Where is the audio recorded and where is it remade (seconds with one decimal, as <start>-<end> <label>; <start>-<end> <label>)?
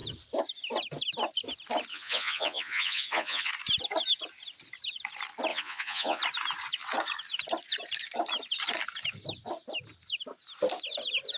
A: 0.0-1.9 recorded; 1.9-3.5 remade; 3.5-5.5 recorded; 5.5-6.2 remade; 6.2-11.4 recorded